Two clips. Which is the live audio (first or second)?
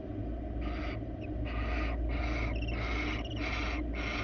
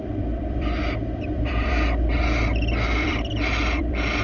first